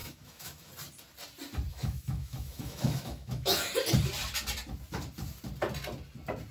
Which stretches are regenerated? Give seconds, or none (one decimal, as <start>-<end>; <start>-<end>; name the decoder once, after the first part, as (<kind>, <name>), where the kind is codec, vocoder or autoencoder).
0.0-0.7 (autoencoder, DAC-VAE); 1.7-3.7